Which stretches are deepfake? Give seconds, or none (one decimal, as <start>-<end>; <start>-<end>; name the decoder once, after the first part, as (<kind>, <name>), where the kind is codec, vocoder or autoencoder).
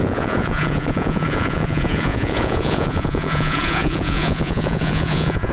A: 0.0-5.5 (vocoder, Vocos)